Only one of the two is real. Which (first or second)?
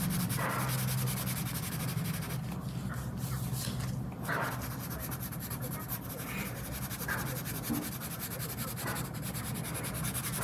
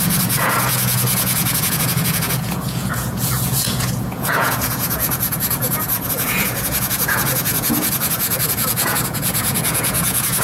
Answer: first